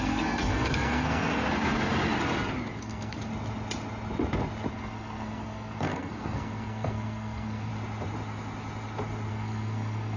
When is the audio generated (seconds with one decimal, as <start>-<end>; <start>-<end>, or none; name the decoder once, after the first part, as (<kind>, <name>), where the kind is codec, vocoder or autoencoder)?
0.0-1.3 (codec, SNAC); 2.8-3.3; 4.7-7.7; 9.3-10.2